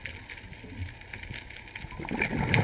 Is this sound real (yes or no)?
yes